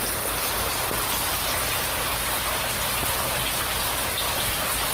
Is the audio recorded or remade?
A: recorded